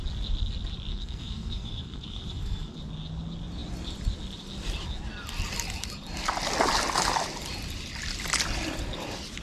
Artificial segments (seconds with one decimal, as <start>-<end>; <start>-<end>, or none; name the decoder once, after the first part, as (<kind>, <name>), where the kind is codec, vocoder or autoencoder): 0.9-2.8 (codec, SNAC)